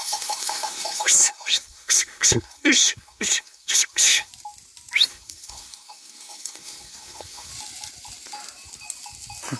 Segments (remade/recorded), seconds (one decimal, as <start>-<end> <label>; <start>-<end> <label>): 0.0-4.3 remade; 4.3-5.1 recorded; 5.1-7.5 remade; 7.5-9.6 recorded